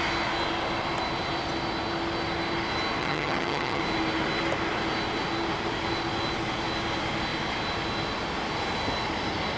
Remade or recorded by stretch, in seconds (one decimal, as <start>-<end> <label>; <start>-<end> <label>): 0.0-3.0 recorded; 3.0-3.8 remade; 3.8-9.6 recorded